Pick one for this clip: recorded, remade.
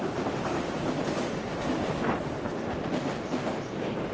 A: recorded